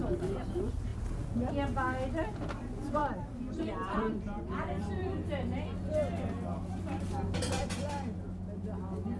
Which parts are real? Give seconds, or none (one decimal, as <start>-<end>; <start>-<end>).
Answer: 0.0-0.9; 1.5-3.0; 5.4-9.2